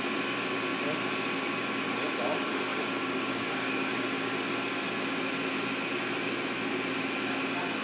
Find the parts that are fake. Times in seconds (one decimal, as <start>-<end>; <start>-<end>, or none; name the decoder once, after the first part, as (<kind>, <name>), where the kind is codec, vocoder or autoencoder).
2.7-3.9 (codec, DAC)